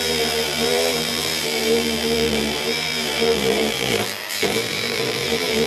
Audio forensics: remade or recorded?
remade